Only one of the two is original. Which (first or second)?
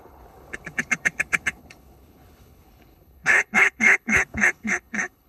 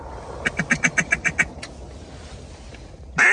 second